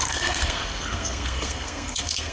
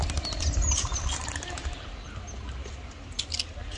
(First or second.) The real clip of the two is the second